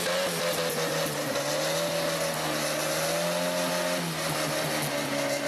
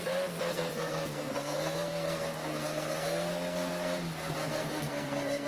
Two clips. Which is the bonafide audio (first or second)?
first